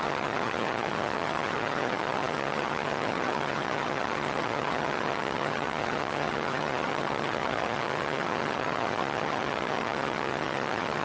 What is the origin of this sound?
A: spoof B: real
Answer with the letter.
A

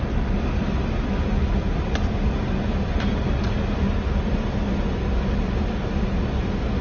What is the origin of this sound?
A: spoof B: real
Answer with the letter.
B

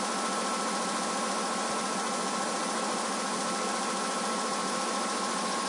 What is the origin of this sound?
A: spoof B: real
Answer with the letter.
B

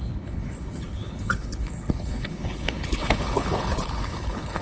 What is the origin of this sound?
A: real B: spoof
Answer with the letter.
B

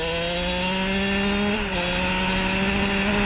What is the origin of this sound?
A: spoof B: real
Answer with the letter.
B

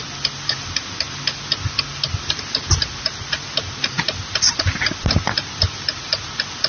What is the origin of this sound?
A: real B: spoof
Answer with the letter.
A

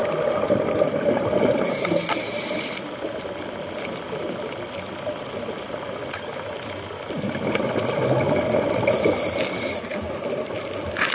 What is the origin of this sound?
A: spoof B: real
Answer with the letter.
B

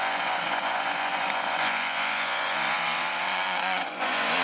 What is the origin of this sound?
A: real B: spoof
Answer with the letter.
B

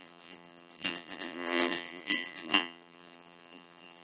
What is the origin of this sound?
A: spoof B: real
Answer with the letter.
A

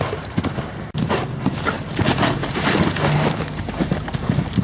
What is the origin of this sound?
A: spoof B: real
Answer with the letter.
B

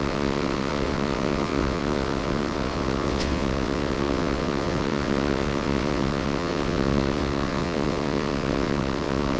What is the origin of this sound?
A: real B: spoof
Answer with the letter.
B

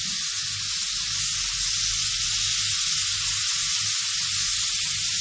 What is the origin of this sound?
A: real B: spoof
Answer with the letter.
A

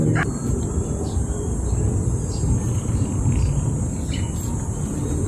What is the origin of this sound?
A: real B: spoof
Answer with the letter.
A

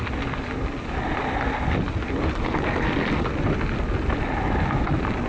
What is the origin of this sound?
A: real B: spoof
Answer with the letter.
A